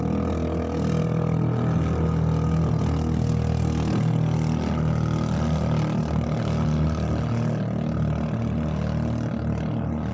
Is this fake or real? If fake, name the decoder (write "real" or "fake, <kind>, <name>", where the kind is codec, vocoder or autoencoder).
real